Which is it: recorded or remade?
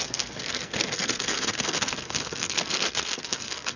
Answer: remade